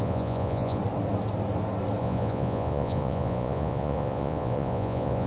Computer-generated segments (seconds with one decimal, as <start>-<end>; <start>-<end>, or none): 0.0-0.8; 2.0-5.3